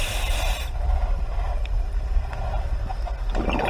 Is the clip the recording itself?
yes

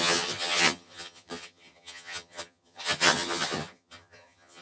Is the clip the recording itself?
no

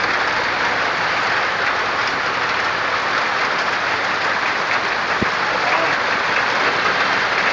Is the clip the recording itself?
yes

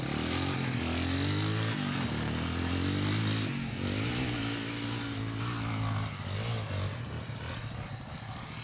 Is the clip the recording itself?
yes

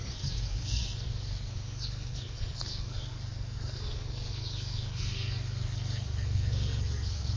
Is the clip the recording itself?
no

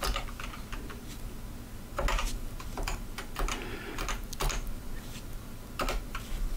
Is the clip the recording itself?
yes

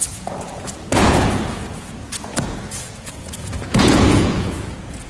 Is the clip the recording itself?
no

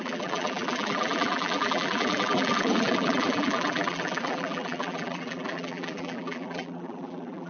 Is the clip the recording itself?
no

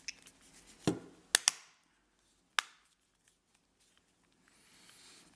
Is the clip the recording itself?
yes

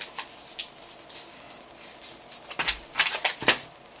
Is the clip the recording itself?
yes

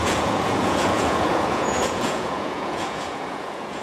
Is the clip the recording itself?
no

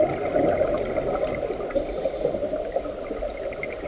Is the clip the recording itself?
yes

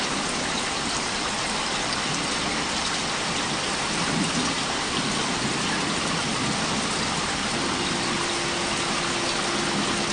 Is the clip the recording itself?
yes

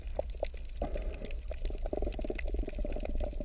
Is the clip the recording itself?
yes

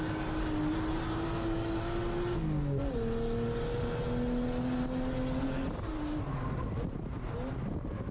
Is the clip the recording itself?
yes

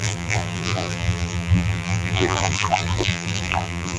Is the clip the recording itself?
no